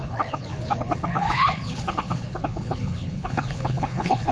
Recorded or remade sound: remade